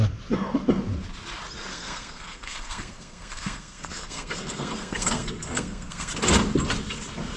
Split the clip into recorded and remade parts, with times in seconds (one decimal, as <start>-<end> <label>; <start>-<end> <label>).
0.0-1.7 recorded; 1.7-6.1 remade; 6.1-7.4 recorded